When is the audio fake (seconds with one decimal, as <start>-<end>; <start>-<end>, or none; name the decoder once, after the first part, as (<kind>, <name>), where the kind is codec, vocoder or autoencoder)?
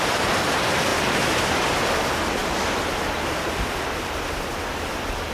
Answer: none